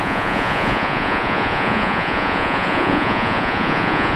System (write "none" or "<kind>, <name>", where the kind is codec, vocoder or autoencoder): vocoder, Vocos